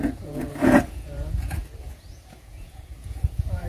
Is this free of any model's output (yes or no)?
no